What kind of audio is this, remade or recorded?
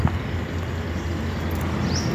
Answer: recorded